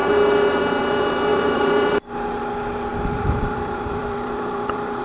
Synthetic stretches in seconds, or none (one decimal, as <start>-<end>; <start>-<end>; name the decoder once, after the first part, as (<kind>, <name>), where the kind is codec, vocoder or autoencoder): 1.3-2.4 (vocoder, BigVGAN v2); 2.9-5.0